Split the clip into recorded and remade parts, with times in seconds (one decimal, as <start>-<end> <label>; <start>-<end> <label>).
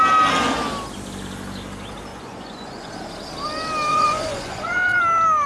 0.0-2.1 recorded; 2.1-2.9 remade; 2.9-3.9 recorded; 3.9-5.0 remade; 5.0-5.5 recorded